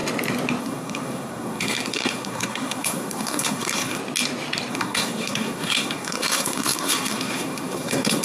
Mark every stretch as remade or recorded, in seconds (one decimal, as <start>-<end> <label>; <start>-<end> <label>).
0.0-0.6 recorded; 0.6-4.0 remade; 4.0-4.7 recorded; 4.7-8.2 remade